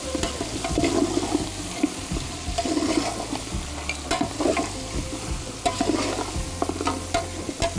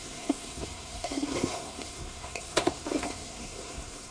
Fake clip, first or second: second